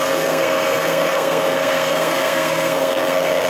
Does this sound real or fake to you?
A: fake